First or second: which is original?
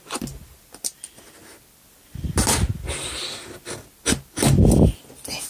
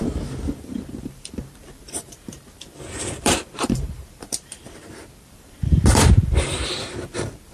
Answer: first